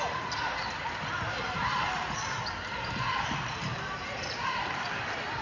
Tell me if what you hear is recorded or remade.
remade